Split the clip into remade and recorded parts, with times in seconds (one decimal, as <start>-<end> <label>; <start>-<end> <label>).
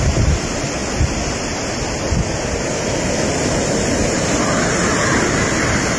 0.0-6.0 recorded